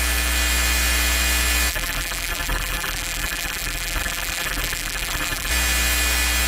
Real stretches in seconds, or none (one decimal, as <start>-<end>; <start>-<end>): 0.0-1.7; 5.5-6.5